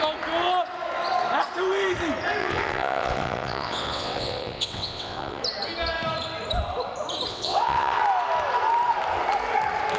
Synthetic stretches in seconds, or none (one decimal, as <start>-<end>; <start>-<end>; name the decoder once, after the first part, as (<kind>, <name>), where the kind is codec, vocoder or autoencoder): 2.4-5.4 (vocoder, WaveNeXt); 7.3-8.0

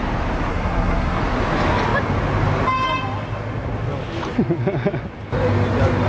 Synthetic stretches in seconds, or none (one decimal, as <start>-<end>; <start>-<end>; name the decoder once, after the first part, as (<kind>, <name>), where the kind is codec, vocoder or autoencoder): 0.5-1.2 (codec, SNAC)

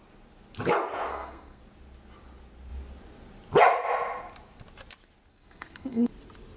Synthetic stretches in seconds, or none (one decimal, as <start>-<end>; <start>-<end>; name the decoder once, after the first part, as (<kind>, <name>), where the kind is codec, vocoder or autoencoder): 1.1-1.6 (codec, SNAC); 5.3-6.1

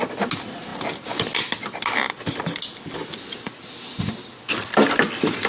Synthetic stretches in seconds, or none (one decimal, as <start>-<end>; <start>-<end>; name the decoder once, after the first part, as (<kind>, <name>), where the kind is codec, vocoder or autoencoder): none